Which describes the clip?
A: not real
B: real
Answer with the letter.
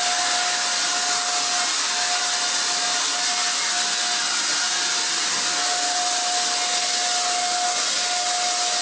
B